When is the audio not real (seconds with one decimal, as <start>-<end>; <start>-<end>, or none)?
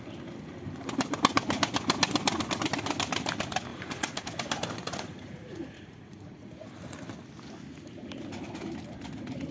3.7-4.2; 4.8-6.7